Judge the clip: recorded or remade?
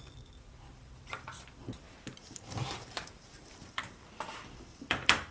remade